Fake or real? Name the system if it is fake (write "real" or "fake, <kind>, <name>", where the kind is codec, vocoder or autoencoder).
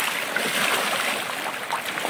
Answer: real